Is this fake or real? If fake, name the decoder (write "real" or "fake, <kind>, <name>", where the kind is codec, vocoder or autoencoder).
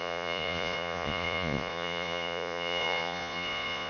fake, vocoder, Vocos